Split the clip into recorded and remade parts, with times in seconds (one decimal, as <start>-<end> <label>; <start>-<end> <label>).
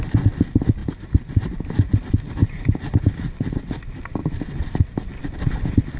0.0-6.0 recorded